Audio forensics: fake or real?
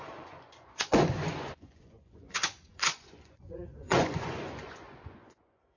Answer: fake